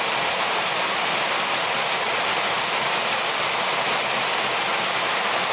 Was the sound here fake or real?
real